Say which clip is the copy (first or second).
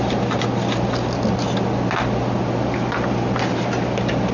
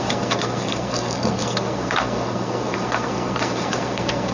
second